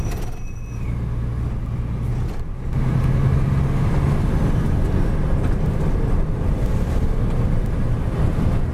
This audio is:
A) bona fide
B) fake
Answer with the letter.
A